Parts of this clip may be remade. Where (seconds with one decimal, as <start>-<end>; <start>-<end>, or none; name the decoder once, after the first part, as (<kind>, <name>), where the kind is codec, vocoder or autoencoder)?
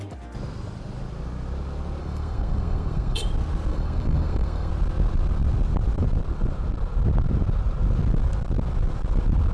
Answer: 2.0-3.2 (codec, SNAC); 3.7-4.7